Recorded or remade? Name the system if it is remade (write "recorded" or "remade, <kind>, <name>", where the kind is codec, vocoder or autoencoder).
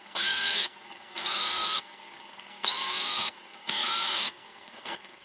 remade, codec, SNAC